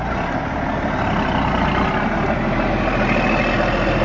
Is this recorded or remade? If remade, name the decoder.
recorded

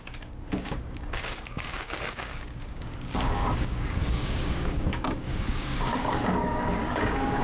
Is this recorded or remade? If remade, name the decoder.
remade, codec, DAC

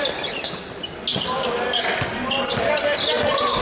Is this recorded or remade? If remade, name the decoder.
recorded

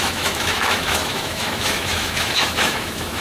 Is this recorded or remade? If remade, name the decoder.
remade, autoencoder, DAC-VAE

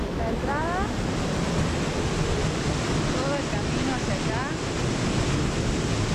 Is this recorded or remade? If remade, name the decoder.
recorded